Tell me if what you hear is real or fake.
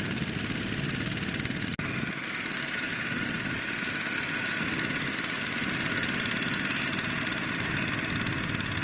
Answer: real